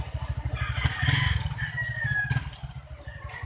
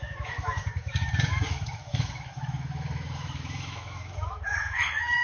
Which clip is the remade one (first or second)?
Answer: second